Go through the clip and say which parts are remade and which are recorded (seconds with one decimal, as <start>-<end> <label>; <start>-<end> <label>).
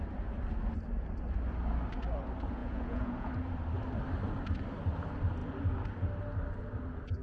0.0-2.6 recorded; 2.6-3.3 remade; 3.3-7.2 recorded